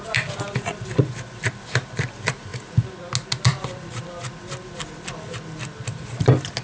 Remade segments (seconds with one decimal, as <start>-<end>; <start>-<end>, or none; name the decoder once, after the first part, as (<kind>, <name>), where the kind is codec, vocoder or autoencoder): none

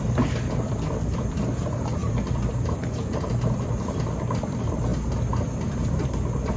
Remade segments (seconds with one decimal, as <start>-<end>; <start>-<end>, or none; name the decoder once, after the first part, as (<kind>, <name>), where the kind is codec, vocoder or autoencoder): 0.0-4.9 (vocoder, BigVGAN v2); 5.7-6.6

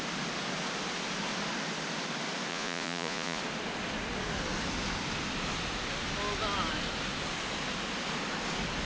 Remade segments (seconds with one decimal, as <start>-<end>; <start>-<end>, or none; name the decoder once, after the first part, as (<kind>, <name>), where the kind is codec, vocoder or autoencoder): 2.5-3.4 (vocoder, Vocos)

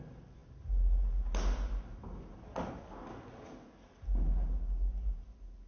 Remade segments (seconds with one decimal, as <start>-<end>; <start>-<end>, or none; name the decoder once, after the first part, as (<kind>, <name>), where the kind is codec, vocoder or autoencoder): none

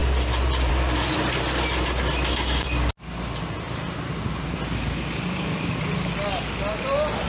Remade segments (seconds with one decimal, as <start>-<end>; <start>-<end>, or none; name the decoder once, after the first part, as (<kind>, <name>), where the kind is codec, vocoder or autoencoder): none

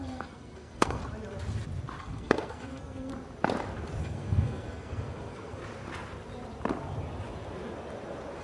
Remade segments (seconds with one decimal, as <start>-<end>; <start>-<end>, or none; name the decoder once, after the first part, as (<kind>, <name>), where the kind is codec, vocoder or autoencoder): 0.0-1.0 (codec, SNAC); 2.0-3.1; 4.0-5.6

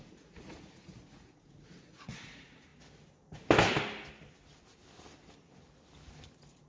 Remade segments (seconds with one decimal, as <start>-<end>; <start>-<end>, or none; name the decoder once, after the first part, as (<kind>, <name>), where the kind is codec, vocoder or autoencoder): 0.0-2.7 (vocoder, Vocos)

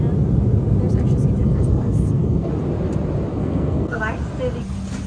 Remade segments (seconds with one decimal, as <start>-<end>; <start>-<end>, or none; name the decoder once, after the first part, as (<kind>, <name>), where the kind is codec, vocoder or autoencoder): 1.4-2.5 (codec, SNAC); 3.3-4.0